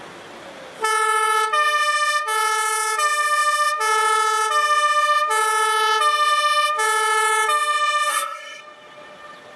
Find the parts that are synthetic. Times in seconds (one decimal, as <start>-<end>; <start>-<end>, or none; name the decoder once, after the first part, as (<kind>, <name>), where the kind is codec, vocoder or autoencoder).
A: 8.1-8.6 (codec, SNAC)